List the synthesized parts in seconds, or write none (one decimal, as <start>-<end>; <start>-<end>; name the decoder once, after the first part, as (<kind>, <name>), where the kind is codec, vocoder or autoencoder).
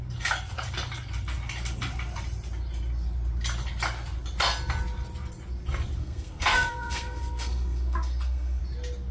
6.0-8.6 (codec, SNAC)